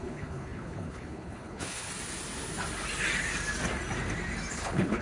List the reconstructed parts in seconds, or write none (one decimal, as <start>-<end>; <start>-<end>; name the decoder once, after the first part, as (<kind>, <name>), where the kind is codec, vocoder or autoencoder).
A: 0.0-1.9 (codec, HILCodec); 4.5-5.0